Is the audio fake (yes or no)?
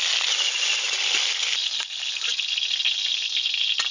no